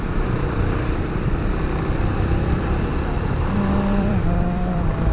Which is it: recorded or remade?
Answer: remade